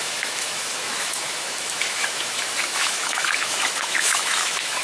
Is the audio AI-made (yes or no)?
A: yes